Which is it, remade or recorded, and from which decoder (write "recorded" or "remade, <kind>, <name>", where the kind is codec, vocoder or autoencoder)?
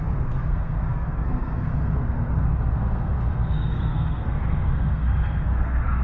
remade, codec, SNAC